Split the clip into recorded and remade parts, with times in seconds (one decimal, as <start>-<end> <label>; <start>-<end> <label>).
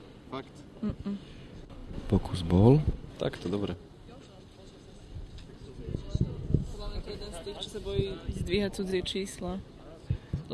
0.0-8.9 recorded; 8.9-9.6 remade; 9.6-10.5 recorded